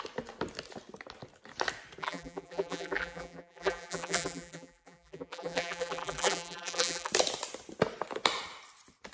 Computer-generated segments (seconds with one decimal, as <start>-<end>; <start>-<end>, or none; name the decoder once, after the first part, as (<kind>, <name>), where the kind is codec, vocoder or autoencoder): 2.0-7.1 (vocoder, BigVGAN v2)